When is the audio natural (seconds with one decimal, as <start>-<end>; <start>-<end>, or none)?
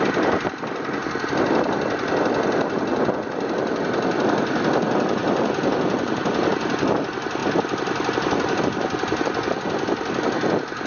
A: 0.0-10.9